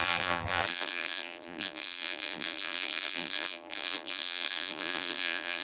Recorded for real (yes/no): no